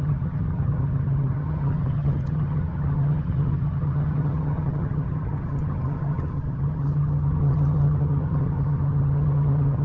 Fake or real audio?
fake